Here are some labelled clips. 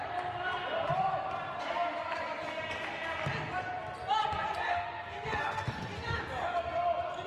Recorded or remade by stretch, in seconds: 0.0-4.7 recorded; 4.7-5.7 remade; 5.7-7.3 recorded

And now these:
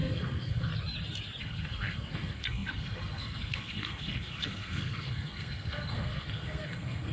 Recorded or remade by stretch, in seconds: 0.0-0.7 remade; 0.7-1.4 recorded; 1.4-7.1 remade

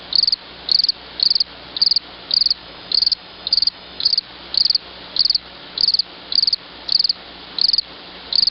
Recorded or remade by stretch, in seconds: 0.0-2.6 recorded; 2.6-4.1 remade; 4.1-8.5 recorded

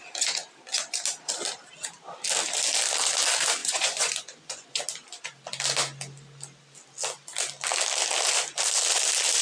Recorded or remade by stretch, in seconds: 0.0-3.6 recorded; 3.6-4.8 remade; 4.8-9.4 recorded

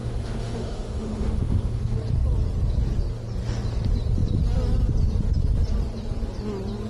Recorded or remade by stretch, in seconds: 0.0-1.8 remade; 1.8-6.9 recorded

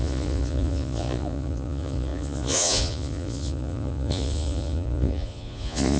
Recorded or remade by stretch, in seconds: 0.0-6.0 remade